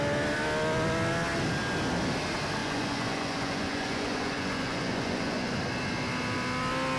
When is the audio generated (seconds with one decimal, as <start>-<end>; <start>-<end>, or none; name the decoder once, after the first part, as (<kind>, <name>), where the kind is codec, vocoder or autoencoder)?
2.6-5.6 (vocoder, Vocos)